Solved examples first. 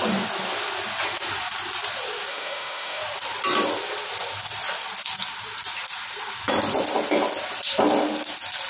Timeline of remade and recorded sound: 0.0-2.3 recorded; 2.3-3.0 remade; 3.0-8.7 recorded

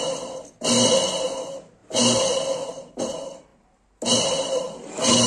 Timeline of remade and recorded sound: 0.0-5.3 recorded